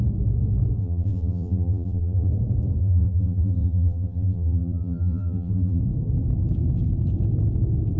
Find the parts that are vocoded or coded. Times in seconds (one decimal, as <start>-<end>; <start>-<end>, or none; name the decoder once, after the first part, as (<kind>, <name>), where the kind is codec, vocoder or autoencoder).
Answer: 0.8-2.3 (vocoder, BigVGAN v2); 2.8-5.8